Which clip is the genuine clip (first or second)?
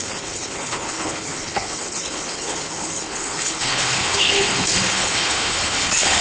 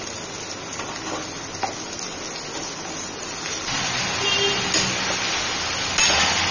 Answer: second